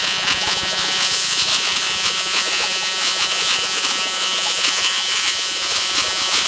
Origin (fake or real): fake